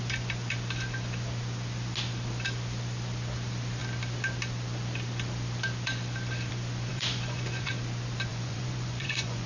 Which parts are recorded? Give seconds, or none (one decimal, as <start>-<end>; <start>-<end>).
0.0-6.9; 7.7-8.3